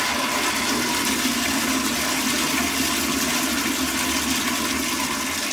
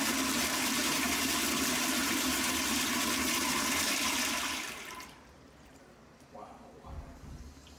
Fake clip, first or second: second